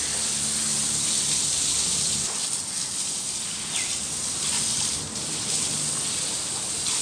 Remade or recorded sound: recorded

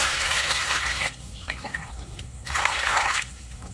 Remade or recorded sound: remade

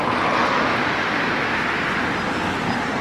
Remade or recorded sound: recorded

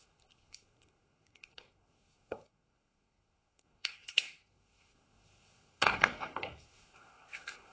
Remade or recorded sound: remade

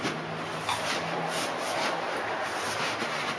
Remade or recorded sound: recorded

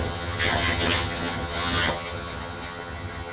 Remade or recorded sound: remade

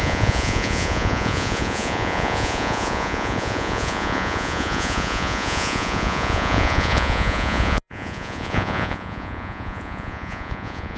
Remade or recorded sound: remade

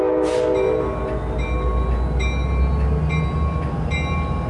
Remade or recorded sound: recorded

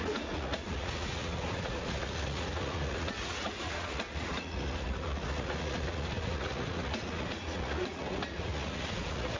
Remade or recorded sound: remade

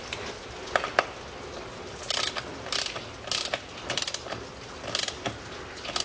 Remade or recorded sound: recorded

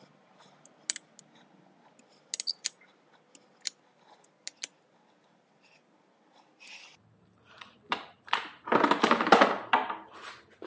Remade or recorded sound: recorded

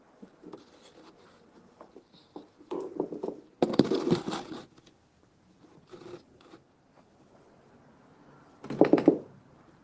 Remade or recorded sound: recorded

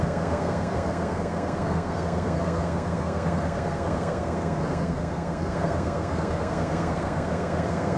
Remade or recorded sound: remade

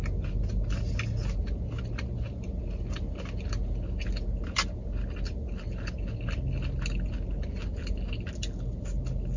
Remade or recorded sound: recorded